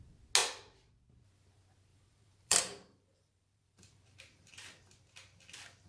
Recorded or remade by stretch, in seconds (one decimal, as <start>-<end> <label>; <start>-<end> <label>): 0.0-1.9 recorded; 1.9-4.5 remade; 4.5-5.9 recorded